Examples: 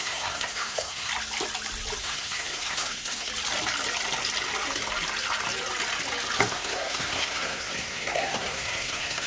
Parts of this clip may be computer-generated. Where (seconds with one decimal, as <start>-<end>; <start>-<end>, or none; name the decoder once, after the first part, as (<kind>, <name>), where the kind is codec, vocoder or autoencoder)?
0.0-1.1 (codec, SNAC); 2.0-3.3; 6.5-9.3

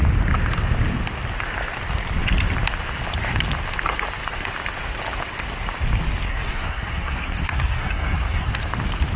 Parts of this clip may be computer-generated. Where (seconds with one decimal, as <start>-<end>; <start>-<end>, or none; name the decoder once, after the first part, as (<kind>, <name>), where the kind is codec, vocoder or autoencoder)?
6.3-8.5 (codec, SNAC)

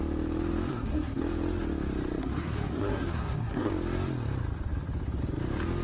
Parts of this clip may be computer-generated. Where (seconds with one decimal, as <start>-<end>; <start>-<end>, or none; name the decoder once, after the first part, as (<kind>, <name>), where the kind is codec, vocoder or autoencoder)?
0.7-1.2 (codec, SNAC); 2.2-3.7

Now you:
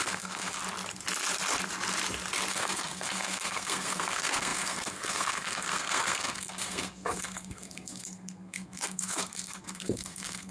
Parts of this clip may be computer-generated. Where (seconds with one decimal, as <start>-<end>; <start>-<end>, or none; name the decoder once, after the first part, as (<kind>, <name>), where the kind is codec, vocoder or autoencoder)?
0.0-0.6 (codec, SNAC); 2.5-10.5